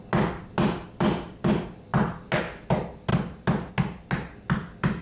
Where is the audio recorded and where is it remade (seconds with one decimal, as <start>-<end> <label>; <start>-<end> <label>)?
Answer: 0.0-5.0 recorded